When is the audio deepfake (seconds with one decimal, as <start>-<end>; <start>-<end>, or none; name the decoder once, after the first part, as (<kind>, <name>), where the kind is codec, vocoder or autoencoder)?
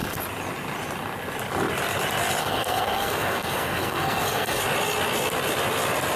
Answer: 2.4-4.6 (codec, SNAC)